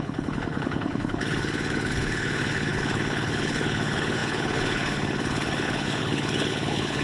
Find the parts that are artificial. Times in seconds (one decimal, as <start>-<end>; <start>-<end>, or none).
0.0-7.0